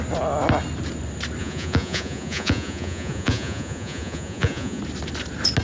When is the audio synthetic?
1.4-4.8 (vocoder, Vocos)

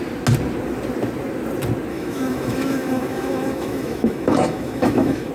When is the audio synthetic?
1.9-5.3 (autoencoder, DAC-VAE)

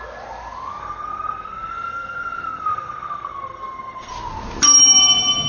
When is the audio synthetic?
0.8-4.1 (codec, SNAC)